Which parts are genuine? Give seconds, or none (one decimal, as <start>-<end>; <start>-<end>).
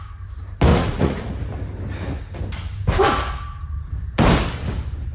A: 0.0-0.7; 1.4-5.1